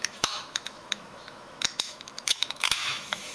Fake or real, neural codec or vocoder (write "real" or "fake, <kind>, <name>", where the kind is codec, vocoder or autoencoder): fake, autoencoder, DAC-VAE